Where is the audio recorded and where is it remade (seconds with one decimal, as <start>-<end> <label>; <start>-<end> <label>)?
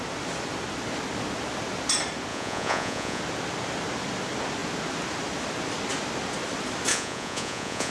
0.0-2.3 recorded; 2.3-3.2 remade; 3.2-6.9 recorded; 6.9-7.9 remade